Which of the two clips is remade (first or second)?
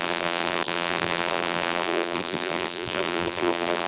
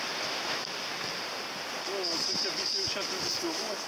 first